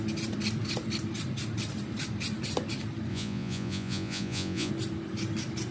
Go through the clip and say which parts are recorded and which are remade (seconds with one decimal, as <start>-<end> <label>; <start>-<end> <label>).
0.0-3.1 recorded; 3.1-4.7 remade; 4.7-5.7 recorded